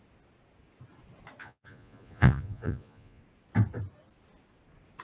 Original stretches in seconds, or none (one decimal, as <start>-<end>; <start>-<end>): 0.0-1.4; 3.2-5.0